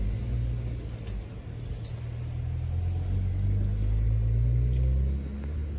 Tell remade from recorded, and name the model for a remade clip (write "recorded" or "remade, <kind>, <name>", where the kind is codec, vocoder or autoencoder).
recorded